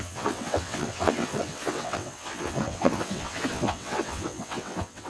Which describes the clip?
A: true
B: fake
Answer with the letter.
B